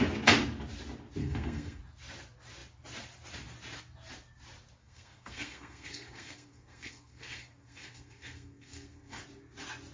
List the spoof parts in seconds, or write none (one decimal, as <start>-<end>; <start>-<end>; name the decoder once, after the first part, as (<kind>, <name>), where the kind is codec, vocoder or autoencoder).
1.2-1.8 (codec, SNAC); 4.8-9.2